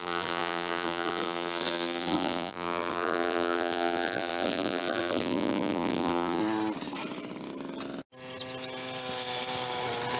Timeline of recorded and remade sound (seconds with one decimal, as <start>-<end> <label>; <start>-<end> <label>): 0.0-6.4 remade; 6.4-10.2 recorded